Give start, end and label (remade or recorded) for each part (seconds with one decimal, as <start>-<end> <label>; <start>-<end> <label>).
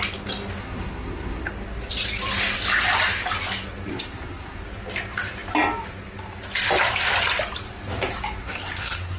0.0-0.6 recorded; 0.6-1.5 remade; 1.5-3.9 recorded; 3.9-4.6 remade; 4.6-8.4 recorded; 8.4-9.2 remade